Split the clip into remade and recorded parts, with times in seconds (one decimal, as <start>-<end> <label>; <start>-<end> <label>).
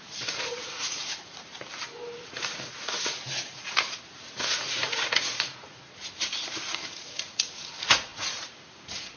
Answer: 0.0-1.5 remade; 1.5-2.2 recorded; 2.2-9.2 remade